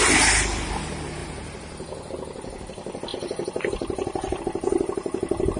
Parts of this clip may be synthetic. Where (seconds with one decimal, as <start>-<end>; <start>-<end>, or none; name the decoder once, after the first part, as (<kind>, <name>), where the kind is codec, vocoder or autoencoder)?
1.2-2.1 (vocoder, BigVGAN v2); 3.1-4.4